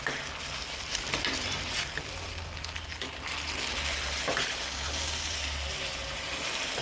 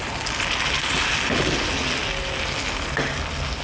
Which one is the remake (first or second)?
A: first